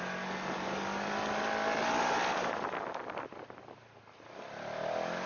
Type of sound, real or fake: real